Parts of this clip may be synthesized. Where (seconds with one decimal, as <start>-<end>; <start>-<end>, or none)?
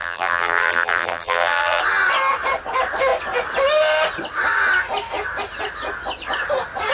0.0-1.8